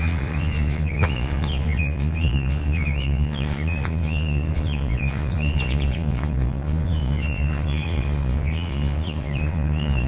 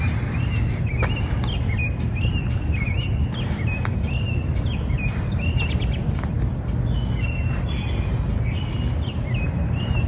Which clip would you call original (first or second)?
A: second